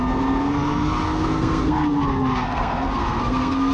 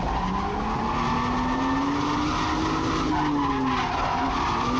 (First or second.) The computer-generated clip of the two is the first